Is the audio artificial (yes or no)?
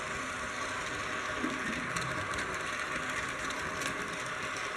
no